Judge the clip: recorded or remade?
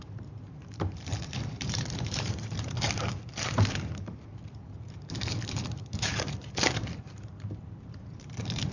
remade